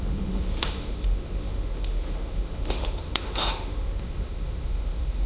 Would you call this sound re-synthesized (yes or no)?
yes